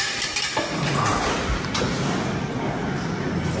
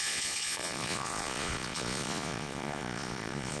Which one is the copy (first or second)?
second